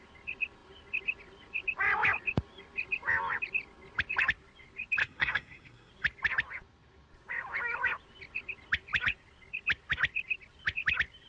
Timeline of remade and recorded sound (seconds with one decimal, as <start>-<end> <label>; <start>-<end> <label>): 0.0-5.0 recorded; 5.0-5.9 remade; 5.9-11.3 recorded